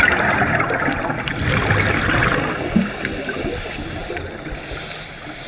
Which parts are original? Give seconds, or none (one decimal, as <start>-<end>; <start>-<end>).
0.0-5.5